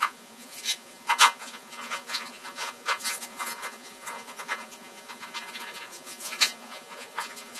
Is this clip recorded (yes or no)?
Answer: no